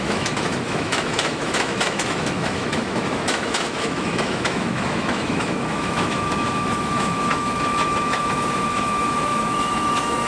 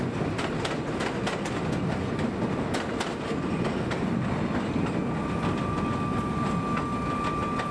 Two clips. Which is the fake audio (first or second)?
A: first